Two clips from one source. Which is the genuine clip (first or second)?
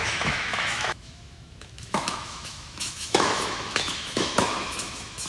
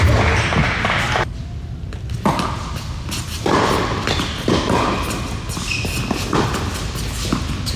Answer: second